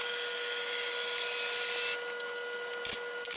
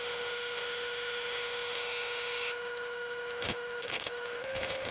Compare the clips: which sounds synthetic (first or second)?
second